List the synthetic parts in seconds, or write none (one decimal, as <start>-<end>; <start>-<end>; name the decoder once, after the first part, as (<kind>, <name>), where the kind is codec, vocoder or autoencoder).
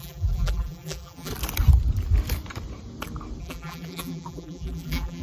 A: 0.0-1.3 (vocoder, BigVGAN v2); 3.4-5.2